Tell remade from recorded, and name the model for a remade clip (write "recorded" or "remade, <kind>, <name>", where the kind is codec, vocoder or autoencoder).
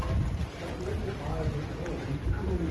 recorded